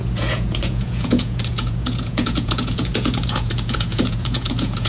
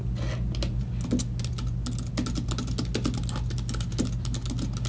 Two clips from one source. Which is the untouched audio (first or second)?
second